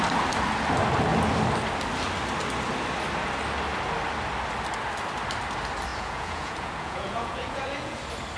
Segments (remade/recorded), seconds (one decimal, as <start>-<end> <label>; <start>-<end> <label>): 0.0-5.9 recorded; 5.9-8.0 remade; 8.0-8.4 recorded